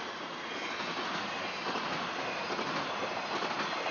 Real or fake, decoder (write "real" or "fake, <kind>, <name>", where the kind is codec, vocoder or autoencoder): real